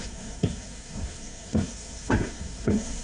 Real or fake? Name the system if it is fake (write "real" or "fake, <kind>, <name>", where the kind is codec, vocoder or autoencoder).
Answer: fake, codec, SNAC